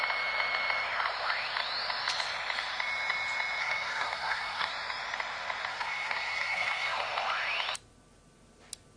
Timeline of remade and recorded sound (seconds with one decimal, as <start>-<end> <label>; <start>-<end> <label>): 0.0-3.6 recorded; 3.6-4.7 remade; 4.7-5.7 recorded; 5.7-7.0 remade; 7.0-9.0 recorded